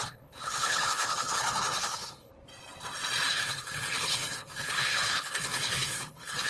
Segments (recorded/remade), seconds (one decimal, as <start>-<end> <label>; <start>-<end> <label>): 0.0-2.3 remade; 2.3-3.3 recorded; 3.3-6.5 remade